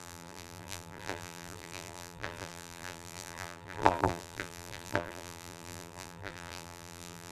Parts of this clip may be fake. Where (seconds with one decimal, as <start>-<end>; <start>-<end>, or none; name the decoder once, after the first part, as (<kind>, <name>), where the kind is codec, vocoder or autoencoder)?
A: 0.0-7.3 (vocoder, BigVGAN v2)